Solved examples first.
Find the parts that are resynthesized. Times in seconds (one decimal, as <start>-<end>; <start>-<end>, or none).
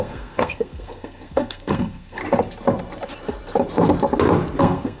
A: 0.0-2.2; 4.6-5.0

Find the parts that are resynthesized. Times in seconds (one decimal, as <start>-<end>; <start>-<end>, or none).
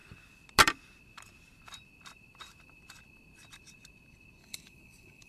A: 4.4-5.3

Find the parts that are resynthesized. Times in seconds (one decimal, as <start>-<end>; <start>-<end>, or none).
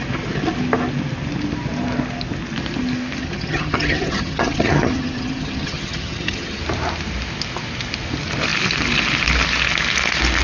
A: 3.2-6.6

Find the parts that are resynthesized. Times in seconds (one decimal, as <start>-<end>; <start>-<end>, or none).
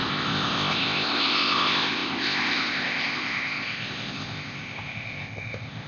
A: 0.0-5.9